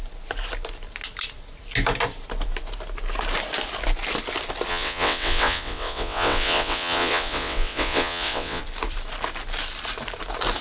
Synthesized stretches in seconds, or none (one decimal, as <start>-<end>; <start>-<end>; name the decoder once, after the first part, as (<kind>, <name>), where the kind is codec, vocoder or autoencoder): 4.7-8.6 (vocoder, WaveNeXt)